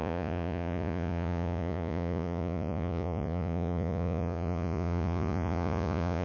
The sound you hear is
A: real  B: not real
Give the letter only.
B